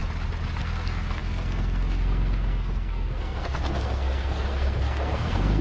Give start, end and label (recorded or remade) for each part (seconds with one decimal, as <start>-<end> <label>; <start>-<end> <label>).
0.0-0.6 recorded; 0.6-5.6 remade